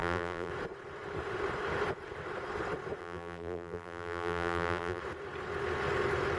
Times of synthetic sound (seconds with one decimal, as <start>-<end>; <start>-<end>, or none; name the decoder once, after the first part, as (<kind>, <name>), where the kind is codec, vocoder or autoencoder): 0.0-0.5 (vocoder, BigVGAN v2); 3.0-5.0